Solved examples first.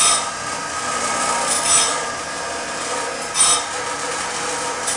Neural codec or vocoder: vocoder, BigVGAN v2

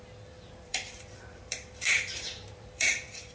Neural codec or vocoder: vocoder, BigVGAN v2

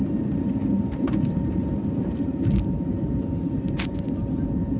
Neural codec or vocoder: vocoder, BigVGAN v2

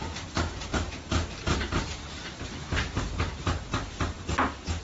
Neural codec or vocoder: vocoder, BigVGAN v2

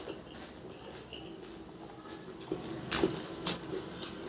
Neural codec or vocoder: none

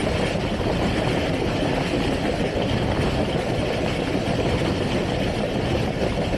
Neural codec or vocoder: none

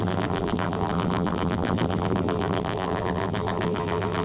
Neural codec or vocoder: vocoder, BigVGAN v2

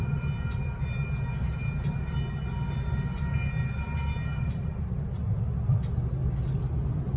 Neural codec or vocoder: none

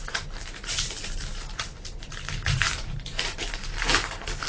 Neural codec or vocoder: vocoder, BigVGAN v2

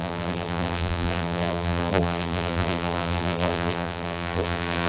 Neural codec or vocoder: vocoder, BigVGAN v2